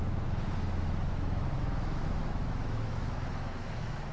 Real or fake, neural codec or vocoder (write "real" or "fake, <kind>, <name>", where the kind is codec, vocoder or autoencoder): fake, autoencoder, DAC-VAE